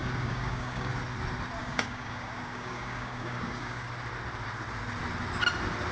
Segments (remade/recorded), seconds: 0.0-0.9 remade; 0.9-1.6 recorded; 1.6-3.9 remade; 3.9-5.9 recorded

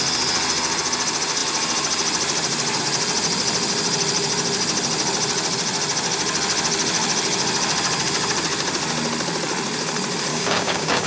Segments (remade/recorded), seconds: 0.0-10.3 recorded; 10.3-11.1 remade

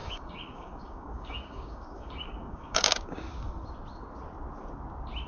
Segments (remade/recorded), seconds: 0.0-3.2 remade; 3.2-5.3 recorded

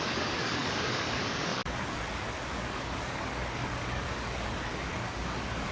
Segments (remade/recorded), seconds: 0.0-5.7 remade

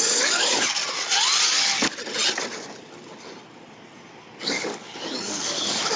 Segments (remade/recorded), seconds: 0.0-0.8 remade; 0.8-4.4 recorded; 4.4-6.0 remade

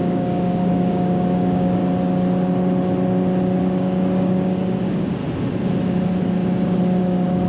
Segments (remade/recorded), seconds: 0.0-1.8 remade; 1.8-3.6 recorded; 3.6-5.2 remade; 5.2-7.0 recorded; 7.0-7.5 remade

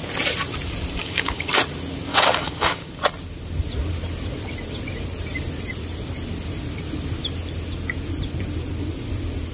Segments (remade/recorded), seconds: 0.0-1.0 recorded; 1.0-1.5 remade; 1.5-2.1 recorded; 2.1-2.9 remade; 2.9-9.5 recorded